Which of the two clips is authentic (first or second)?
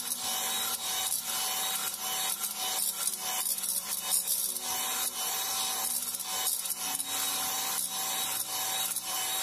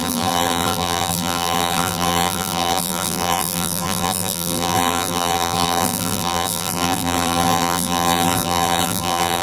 first